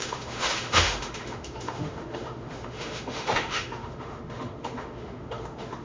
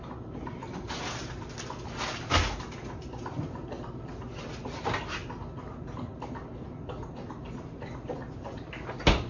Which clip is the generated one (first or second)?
first